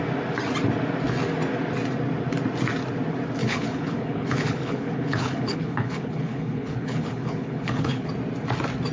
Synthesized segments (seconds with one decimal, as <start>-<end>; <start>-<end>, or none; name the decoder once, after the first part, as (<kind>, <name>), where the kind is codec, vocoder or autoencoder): 3.4-8.1 (codec, HILCodec)